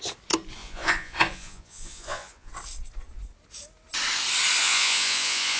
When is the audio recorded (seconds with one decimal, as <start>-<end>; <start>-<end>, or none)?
0.0-0.6; 2.5-4.6